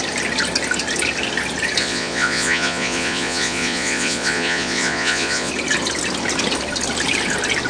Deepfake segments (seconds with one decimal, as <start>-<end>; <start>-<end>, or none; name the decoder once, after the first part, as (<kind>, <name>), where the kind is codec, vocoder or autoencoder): 1.8-5.5 (vocoder, Vocos)